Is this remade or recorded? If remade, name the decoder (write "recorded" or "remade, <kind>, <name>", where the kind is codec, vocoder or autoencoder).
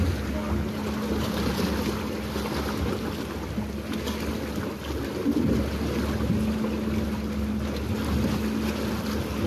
recorded